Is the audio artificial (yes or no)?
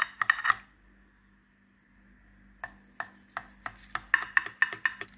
no